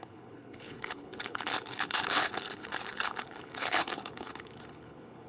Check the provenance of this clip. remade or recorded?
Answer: remade